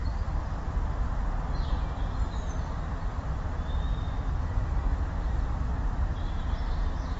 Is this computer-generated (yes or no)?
no